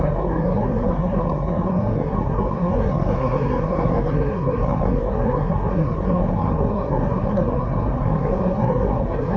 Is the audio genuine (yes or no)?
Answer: no